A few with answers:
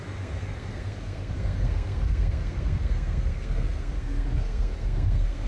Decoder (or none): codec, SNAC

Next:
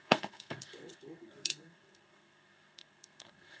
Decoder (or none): codec, SNAC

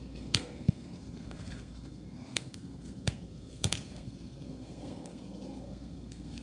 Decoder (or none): codec, SNAC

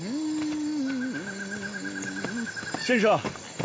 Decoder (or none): none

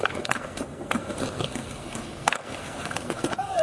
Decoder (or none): codec, SNAC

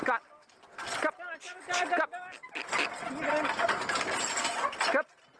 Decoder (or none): none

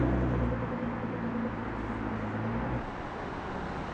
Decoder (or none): none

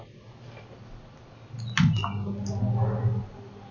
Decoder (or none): none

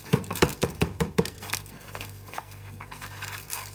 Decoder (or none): codec, SNAC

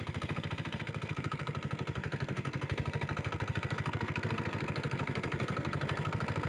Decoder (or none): codec, SNAC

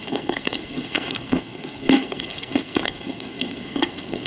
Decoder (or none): codec, SNAC